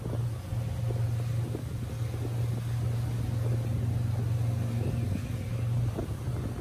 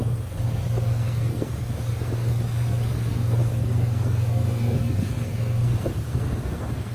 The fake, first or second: second